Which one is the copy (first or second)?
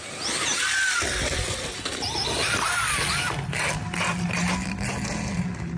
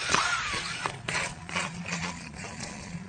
second